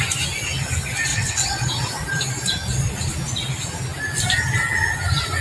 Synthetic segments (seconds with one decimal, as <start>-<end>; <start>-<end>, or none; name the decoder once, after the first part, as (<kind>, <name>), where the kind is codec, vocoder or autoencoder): 1.1-1.7 (vocoder, WaveNeXt)